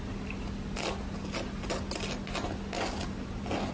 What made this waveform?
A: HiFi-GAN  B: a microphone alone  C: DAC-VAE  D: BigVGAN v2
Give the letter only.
B